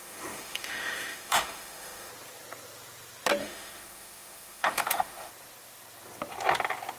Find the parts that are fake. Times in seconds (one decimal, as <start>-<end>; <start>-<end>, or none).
0.0-2.1; 3.4-5.3